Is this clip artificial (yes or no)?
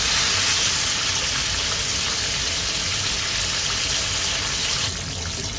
no